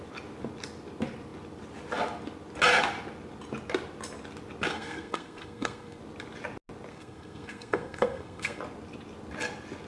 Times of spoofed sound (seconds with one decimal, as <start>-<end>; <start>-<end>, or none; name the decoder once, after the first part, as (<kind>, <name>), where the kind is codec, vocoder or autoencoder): 4.7-6.0 (codec, SNAC); 6.9-8.6